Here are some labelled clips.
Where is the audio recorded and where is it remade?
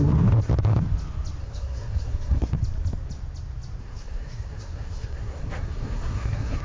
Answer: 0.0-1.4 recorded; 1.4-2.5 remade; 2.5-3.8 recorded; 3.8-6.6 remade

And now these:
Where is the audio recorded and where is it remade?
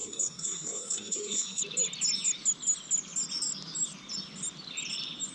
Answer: 0.0-1.6 remade; 1.6-5.3 recorded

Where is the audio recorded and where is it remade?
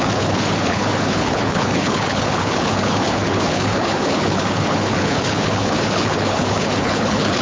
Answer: 0.0-7.4 remade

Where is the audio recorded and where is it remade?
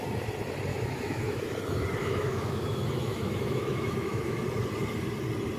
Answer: 0.0-0.7 recorded; 0.7-1.4 remade; 1.4-2.0 recorded; 2.0-4.4 remade; 4.4-5.6 recorded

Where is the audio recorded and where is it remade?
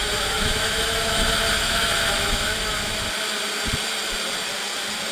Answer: 0.0-3.1 remade; 3.1-5.1 recorded